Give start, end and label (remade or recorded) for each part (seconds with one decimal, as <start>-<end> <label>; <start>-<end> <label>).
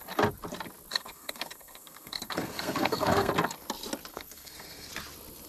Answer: 0.0-0.9 recorded; 0.9-3.3 remade; 3.3-4.1 recorded; 4.1-4.9 remade; 4.9-5.5 recorded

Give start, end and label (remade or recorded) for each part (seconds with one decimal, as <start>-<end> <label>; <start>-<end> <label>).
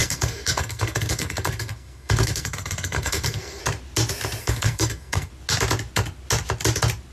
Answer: 0.0-3.6 remade; 3.6-4.4 recorded; 4.4-5.3 remade; 5.3-7.1 recorded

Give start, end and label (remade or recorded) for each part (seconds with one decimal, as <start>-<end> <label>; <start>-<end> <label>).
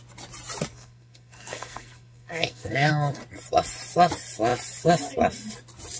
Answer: 0.0-0.7 recorded; 0.7-2.9 remade; 2.9-6.0 recorded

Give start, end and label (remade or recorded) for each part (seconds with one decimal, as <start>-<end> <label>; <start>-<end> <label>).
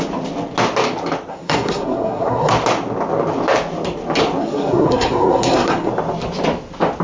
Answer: 0.0-1.3 recorded; 1.3-2.5 remade; 2.5-4.4 recorded; 4.4-5.9 remade; 5.9-7.0 recorded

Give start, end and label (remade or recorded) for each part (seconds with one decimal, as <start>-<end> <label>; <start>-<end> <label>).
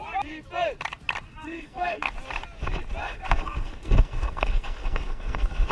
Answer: 0.0-1.3 recorded; 1.3-2.1 remade; 2.1-3.0 recorded; 3.0-5.7 remade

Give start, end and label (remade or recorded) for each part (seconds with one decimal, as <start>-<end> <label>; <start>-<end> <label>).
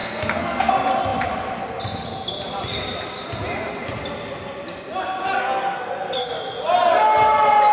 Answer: 0.0-0.7 remade; 0.7-5.4 recorded; 5.4-6.3 remade; 6.3-7.7 recorded